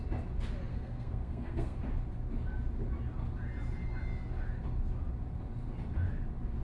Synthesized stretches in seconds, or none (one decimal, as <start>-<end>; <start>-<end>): 0.7-1.8